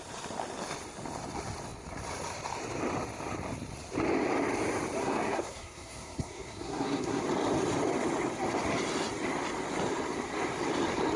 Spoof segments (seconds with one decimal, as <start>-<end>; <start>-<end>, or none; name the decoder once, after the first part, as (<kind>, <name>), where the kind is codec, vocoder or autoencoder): 5.0-7.2 (codec, SNAC)